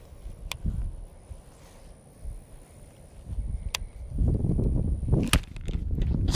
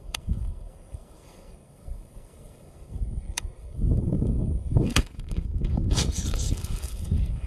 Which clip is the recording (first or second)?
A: first